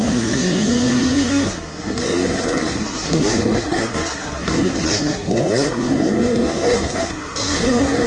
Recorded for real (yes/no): no